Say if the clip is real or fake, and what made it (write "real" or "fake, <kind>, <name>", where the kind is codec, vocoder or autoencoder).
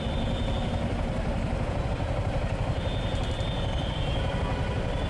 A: real